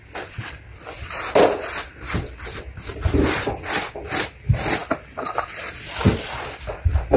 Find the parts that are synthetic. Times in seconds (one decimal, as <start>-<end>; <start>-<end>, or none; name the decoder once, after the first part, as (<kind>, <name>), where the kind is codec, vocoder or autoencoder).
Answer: none